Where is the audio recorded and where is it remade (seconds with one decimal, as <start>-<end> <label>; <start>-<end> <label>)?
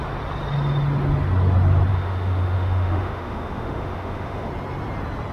0.0-1.9 recorded; 1.9-4.5 remade; 4.5-5.3 recorded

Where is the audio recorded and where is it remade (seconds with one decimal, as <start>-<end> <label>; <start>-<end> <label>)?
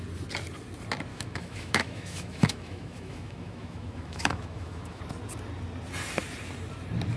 0.0-1.1 recorded; 1.1-5.0 remade; 5.0-7.2 recorded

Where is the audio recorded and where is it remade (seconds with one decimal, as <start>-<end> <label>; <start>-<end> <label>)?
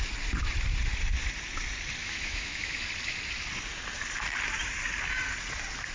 0.0-2.0 recorded; 2.0-2.9 remade; 2.9-5.9 recorded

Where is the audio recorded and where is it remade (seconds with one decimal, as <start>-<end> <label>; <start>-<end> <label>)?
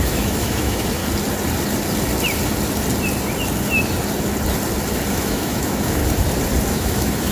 0.0-1.0 remade; 1.0-5.1 recorded; 5.1-6.0 remade; 6.0-6.7 recorded; 6.7-7.3 remade